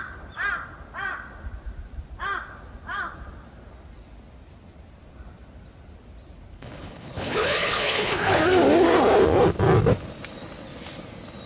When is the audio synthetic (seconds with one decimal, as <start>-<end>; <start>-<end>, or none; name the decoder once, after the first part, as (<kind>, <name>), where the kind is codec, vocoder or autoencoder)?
6.5-8.4 (codec, HILCodec)